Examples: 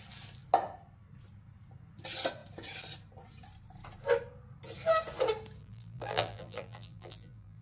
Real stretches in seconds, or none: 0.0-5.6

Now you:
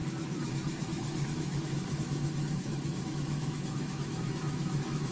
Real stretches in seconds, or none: none

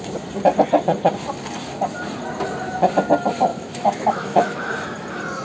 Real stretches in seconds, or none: 0.0-3.5; 4.7-5.4

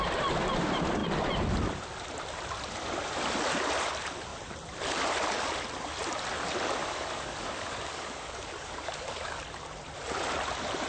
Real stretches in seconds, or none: 0.0-6.8; 9.4-10.9